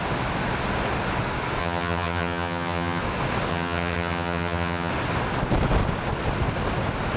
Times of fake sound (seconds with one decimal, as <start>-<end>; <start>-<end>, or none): 1.6-3.0; 3.5-4.9